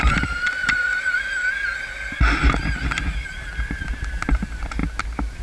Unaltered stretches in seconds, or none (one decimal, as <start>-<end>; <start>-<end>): 0.0-0.6; 1.2-5.4